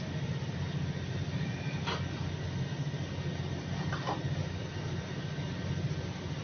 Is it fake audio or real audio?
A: real